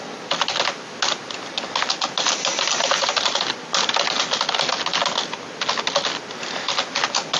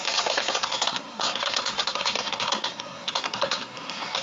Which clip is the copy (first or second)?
second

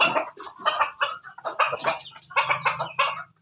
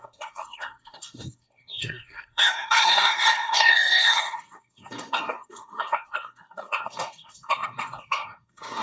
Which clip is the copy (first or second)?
second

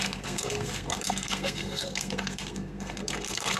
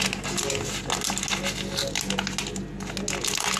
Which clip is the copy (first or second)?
first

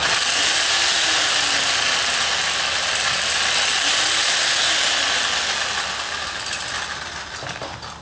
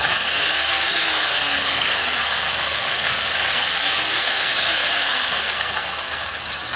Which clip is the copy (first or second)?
second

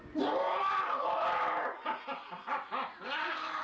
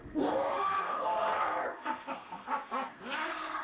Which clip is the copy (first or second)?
second